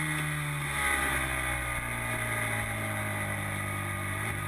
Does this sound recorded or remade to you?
recorded